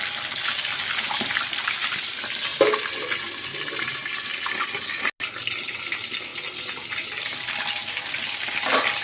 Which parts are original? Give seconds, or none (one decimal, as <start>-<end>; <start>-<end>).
0.0-9.0

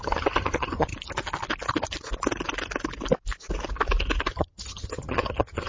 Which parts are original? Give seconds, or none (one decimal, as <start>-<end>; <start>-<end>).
0.9-4.3

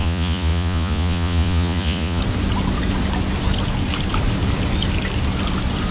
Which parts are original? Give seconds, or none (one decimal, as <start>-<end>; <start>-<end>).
2.2-5.9

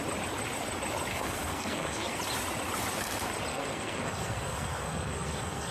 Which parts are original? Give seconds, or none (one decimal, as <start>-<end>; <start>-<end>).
0.0-1.1; 2.2-3.5

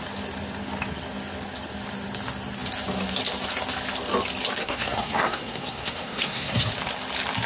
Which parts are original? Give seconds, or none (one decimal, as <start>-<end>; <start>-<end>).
0.0-4.6; 6.7-7.5

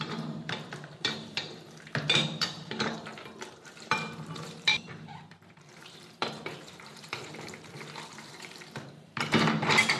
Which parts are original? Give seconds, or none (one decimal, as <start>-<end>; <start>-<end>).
none

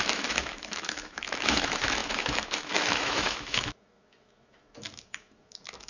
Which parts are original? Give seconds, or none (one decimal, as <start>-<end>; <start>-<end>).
none

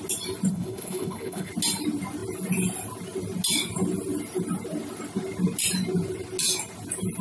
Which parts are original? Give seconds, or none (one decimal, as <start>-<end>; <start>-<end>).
0.0-0.5; 1.5-7.2